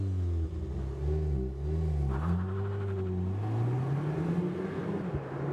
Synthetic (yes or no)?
no